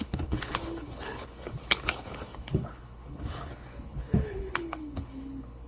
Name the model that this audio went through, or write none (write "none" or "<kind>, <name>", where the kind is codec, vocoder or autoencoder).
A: codec, HILCodec